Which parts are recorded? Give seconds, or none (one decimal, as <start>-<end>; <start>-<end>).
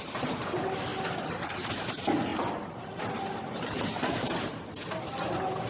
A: 0.0-0.9; 1.5-2.3